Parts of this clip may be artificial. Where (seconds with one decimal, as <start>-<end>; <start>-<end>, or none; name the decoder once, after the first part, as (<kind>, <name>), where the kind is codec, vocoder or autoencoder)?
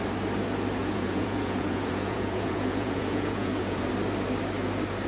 0.8-3.9 (vocoder, Vocos)